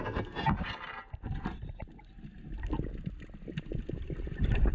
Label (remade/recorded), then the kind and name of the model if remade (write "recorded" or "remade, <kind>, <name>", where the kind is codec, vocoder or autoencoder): recorded